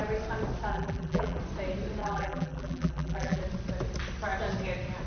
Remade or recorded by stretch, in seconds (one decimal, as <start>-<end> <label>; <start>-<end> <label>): 0.0-0.7 recorded; 0.7-1.4 remade; 1.4-2.0 recorded; 2.0-3.4 remade; 3.4-5.1 recorded